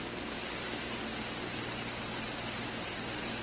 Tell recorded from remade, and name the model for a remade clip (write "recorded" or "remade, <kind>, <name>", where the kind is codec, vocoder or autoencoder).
recorded